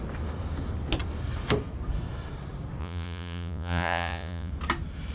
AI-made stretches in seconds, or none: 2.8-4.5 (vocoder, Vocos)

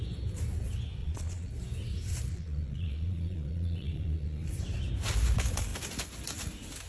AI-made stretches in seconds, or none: 1.0-1.5 (vocoder, Vocos); 2.3-4.5

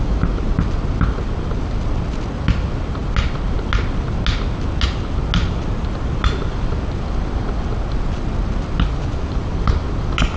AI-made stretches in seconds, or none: none

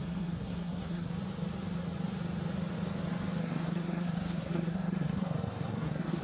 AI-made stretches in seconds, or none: 0.0-1.1 (codec, SNAC); 3.4-6.2

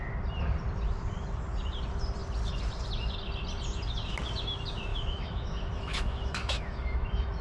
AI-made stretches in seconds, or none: 4.9-7.4 (autoencoder, DAC-VAE)